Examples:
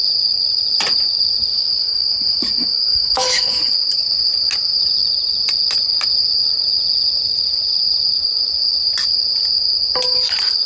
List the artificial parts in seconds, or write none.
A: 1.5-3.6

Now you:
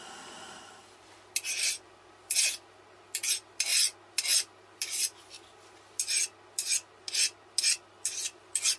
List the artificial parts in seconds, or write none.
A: none

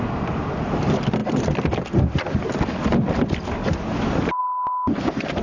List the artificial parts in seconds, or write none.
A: none

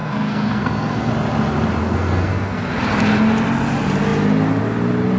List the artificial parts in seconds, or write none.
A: 0.0-1.1; 1.8-2.7

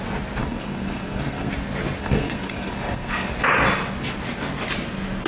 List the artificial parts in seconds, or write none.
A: 0.4-1.5; 2.0-3.3